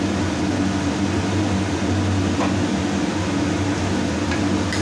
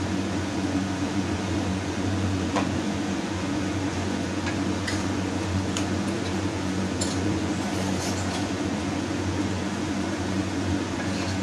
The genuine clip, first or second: first